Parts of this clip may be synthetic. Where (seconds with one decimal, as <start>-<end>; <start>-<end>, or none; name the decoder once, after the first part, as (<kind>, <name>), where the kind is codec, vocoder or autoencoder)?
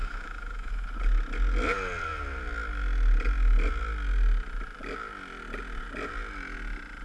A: 0.0-0.7 (autoencoder, DAC-VAE)